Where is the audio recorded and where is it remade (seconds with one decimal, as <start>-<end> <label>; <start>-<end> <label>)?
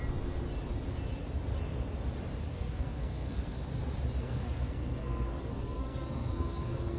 0.0-2.4 recorded; 2.4-3.6 remade; 3.6-4.2 recorded; 4.2-7.0 remade